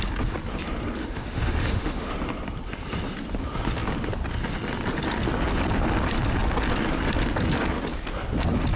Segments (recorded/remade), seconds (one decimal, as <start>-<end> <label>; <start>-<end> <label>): 0.0-1.0 recorded; 1.0-2.1 remade; 2.1-8.8 recorded